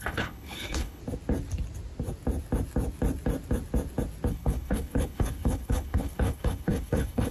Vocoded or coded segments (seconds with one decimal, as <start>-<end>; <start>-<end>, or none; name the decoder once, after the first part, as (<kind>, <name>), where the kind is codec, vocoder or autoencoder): 0.0-1.0 (codec, HILCodec); 4.3-7.3